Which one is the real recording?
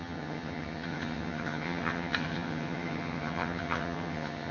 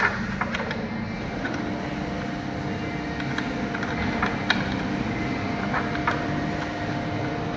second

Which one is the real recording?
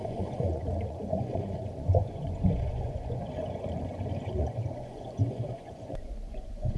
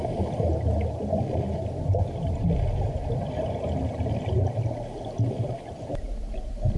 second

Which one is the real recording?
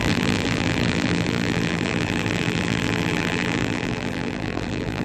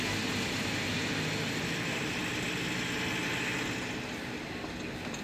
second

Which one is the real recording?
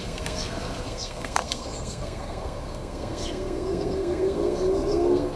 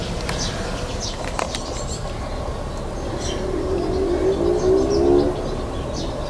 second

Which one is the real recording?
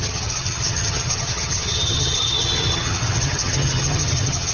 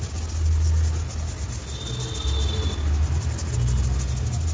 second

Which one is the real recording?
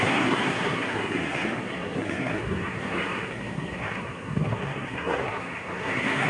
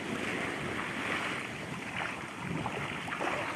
second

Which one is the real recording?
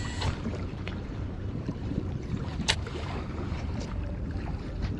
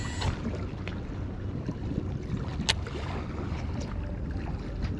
second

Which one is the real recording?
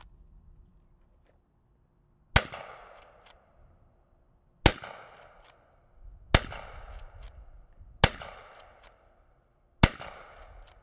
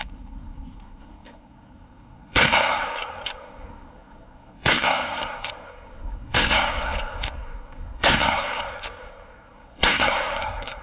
first